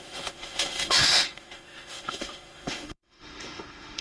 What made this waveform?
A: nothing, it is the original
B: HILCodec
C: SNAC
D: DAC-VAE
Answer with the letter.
D